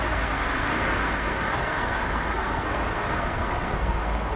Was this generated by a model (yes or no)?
yes